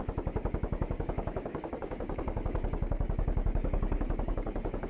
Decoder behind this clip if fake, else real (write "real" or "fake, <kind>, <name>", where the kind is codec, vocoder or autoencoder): fake, codec, DAC